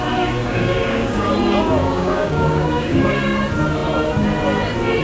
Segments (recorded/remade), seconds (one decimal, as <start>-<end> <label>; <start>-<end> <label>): 0.0-0.4 recorded; 0.4-1.3 remade; 1.3-1.8 recorded; 1.8-3.1 remade; 3.1-5.0 recorded